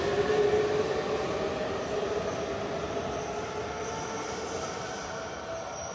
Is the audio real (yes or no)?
yes